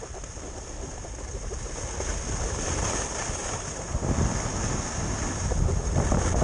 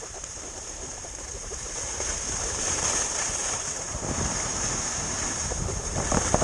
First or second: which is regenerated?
second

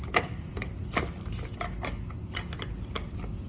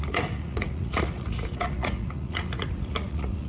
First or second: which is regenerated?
second